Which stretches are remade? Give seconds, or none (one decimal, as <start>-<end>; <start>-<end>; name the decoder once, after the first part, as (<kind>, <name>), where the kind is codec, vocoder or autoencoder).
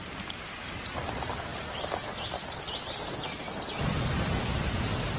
none